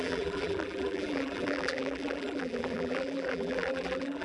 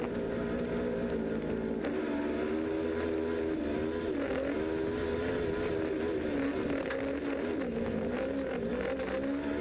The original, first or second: second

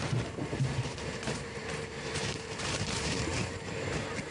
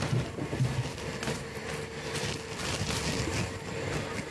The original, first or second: second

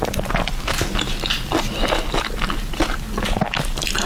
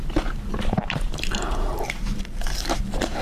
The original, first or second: first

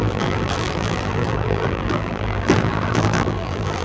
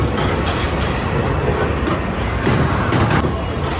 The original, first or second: second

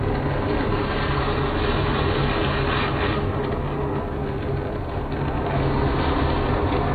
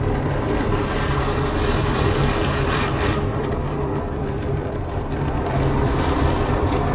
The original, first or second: first